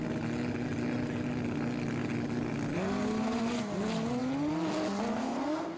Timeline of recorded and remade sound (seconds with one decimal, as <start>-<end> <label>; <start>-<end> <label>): 0.0-5.2 recorded; 5.2-5.8 remade